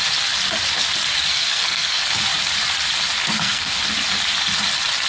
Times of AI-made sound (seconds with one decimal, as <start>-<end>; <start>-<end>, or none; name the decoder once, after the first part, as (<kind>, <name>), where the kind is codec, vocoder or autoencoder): 1.3-2.0 (codec, SNAC); 3.2-3.8